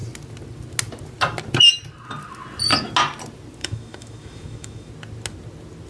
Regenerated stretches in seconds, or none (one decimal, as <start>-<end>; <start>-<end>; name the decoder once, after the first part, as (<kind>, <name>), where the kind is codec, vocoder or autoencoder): 3.6-4.9 (autoencoder, DAC-VAE)